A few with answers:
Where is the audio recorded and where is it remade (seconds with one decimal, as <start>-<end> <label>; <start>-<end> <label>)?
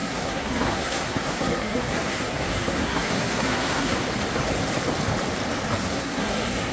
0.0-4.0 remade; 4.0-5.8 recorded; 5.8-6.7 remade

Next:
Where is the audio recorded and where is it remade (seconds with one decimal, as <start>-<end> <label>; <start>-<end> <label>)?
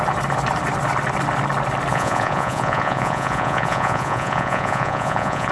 0.0-1.9 recorded; 1.9-5.5 remade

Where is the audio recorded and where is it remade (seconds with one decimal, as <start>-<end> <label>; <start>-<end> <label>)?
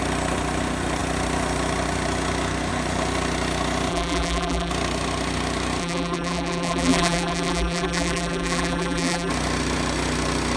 0.0-3.9 recorded; 3.9-4.7 remade; 4.7-5.8 recorded; 5.8-9.3 remade; 9.3-10.6 recorded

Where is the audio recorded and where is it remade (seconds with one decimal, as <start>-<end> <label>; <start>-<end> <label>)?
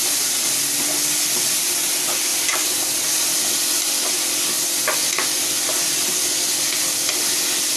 0.0-0.6 remade; 0.6-2.3 recorded; 2.3-3.0 remade; 3.0-7.8 recorded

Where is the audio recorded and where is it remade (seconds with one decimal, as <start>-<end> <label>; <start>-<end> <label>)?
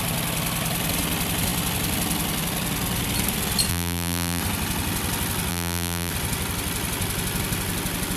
0.0-3.7 recorded; 3.7-4.4 remade; 4.4-5.5 recorded; 5.5-6.1 remade; 6.1-8.2 recorded